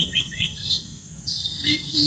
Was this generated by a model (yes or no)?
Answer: yes